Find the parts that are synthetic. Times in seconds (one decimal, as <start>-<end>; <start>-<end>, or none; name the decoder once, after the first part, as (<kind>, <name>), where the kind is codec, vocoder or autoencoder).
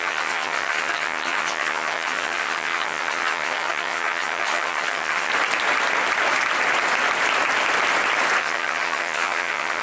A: 0.0-5.3 (vocoder, HiFi-GAN); 8.4-9.8